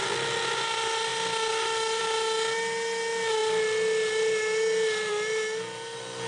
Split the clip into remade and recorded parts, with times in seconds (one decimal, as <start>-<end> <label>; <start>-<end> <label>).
0.0-6.3 recorded